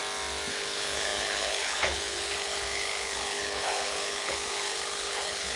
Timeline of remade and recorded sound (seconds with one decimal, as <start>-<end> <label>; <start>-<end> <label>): 0.0-0.5 recorded; 0.5-5.6 remade